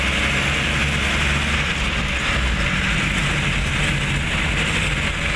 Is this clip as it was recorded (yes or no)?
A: yes